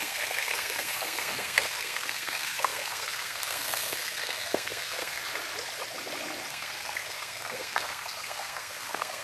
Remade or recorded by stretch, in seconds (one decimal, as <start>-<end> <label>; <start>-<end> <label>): 0.0-5.2 remade; 5.2-6.5 recorded; 6.5-9.2 remade